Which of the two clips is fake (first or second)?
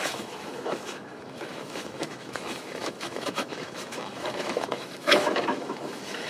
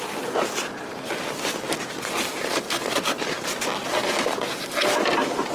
first